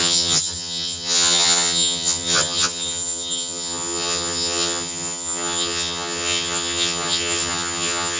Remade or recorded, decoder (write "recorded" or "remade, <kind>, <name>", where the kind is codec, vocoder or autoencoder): remade, vocoder, HiFi-GAN